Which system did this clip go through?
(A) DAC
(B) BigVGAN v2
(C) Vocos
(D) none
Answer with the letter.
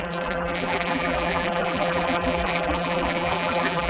B